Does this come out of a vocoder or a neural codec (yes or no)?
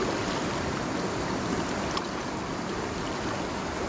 no